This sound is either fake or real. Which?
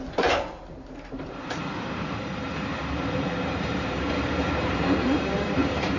fake